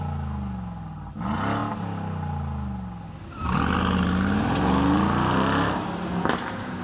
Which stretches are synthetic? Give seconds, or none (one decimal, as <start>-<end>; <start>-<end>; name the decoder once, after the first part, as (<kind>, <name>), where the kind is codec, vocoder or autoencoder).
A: none